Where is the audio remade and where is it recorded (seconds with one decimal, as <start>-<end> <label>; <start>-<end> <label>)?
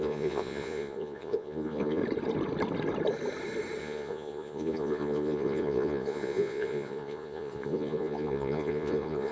0.0-2.0 remade; 2.0-3.8 recorded; 3.8-9.3 remade